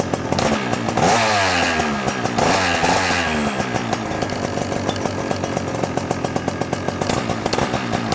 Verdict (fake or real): real